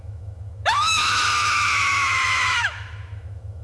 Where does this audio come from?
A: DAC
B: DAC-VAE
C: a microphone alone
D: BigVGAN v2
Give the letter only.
B